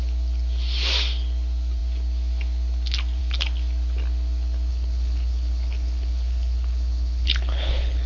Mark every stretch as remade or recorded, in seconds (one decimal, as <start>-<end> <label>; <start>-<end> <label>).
0.0-4.7 recorded; 4.7-8.1 remade